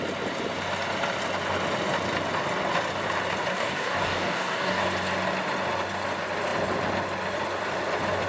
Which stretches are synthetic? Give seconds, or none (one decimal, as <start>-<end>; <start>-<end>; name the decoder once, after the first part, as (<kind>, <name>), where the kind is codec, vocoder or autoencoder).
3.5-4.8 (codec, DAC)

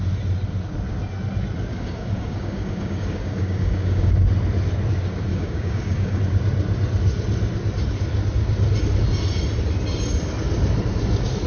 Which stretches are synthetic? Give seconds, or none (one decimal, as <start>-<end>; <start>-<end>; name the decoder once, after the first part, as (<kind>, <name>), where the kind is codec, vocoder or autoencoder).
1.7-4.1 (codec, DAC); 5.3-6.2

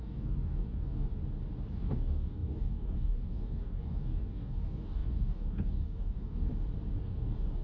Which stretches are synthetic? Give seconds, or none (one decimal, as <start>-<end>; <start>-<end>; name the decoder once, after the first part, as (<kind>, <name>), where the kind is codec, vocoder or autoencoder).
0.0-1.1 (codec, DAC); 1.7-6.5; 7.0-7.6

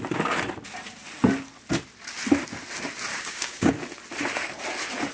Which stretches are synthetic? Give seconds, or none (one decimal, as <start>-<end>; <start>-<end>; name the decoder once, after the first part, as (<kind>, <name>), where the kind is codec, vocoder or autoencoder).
3.1-3.7 (codec, DAC)